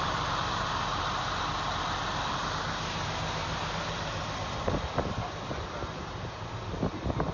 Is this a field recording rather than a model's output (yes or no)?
no